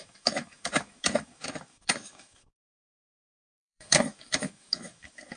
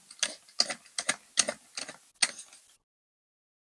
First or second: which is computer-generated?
first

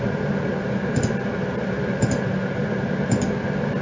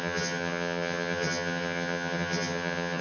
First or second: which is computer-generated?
second